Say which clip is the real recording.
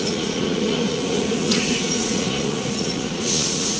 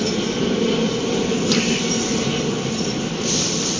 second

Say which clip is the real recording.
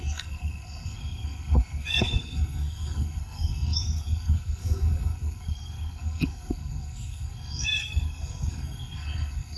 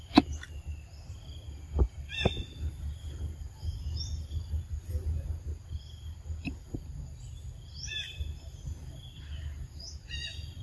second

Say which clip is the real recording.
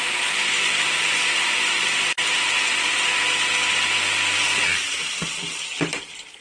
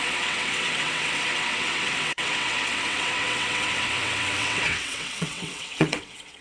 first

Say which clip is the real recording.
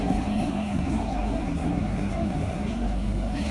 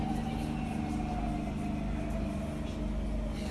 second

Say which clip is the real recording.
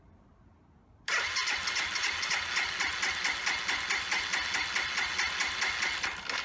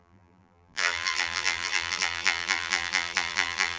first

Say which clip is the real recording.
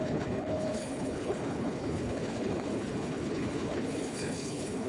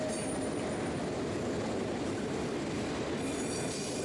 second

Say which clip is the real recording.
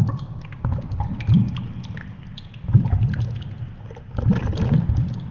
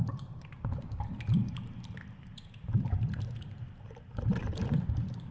first